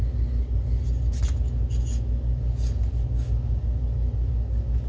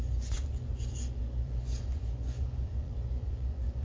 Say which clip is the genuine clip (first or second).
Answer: first